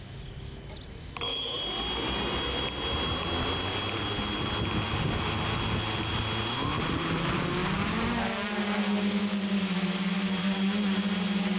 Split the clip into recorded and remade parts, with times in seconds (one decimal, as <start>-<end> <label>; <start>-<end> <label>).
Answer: 0.0-11.6 recorded